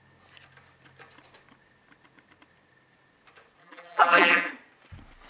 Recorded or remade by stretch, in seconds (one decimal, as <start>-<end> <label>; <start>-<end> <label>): 0.0-3.6 recorded; 3.6-4.5 remade; 4.5-5.3 recorded